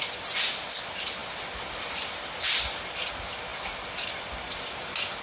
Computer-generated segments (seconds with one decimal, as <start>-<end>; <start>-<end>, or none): none